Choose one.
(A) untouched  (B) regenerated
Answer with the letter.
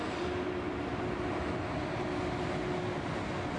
A